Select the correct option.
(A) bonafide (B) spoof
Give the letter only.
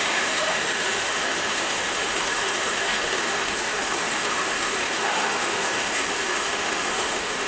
B